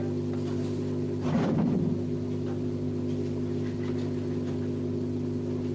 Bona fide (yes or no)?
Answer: yes